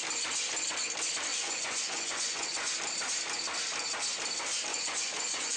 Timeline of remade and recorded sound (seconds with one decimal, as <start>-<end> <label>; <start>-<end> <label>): 0.0-1.3 recorded; 1.3-2.7 remade; 2.7-4.7 recorded; 4.7-5.6 remade